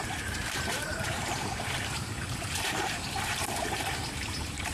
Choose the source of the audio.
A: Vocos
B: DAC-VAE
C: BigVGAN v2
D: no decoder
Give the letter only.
C